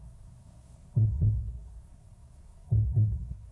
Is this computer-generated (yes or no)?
yes